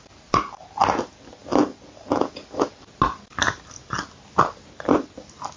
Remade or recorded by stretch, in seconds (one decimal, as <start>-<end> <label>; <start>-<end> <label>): 0.0-5.6 recorded